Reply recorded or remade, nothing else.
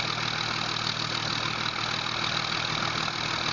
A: recorded